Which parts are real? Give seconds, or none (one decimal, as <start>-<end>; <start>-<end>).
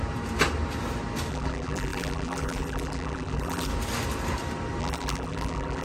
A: 0.0-1.3; 3.7-4.8